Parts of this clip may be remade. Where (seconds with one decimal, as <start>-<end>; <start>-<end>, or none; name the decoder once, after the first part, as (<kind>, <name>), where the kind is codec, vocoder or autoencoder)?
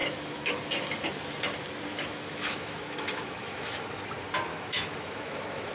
0.0-0.6 (autoencoder, DAC-VAE); 1.9-4.0; 4.5-5.7